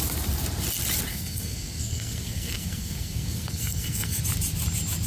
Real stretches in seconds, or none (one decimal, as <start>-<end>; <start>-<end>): 0.0-1.1; 4.2-5.1